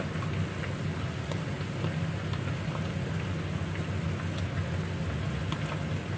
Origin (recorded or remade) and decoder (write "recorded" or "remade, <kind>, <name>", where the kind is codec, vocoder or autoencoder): recorded